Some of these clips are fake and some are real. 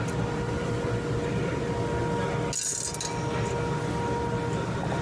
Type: real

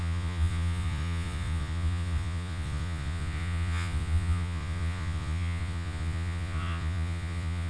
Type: fake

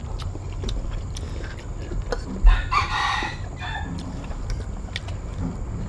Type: real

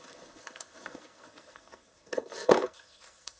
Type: fake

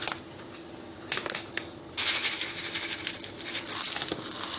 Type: real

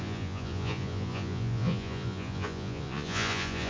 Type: fake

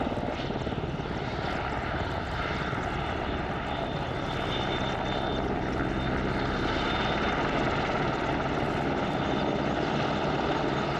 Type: real